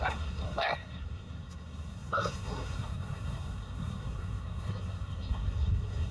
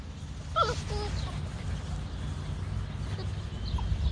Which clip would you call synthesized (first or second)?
first